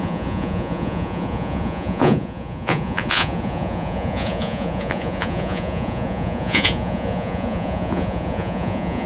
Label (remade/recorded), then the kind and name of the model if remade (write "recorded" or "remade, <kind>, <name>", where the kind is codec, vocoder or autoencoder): remade, vocoder, Vocos